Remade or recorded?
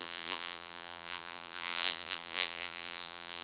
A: remade